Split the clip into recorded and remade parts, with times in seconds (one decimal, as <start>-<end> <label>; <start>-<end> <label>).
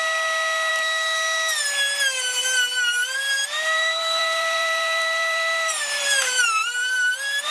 0.0-3.0 recorded; 3.0-7.5 remade